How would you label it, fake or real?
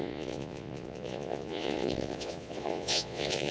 fake